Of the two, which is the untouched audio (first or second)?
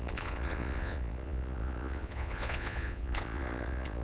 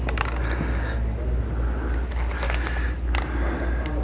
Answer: second